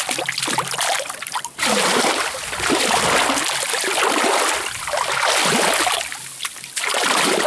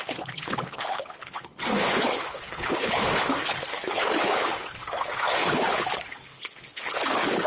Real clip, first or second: first